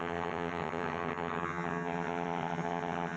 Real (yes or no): no